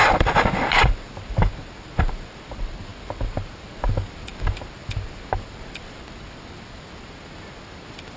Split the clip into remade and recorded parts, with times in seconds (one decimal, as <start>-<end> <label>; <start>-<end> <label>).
0.0-8.2 recorded